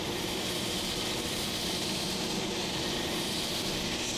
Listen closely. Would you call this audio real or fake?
fake